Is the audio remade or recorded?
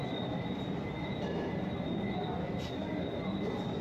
recorded